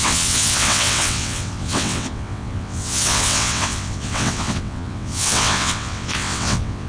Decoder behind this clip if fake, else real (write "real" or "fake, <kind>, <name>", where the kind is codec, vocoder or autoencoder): fake, vocoder, WaveNeXt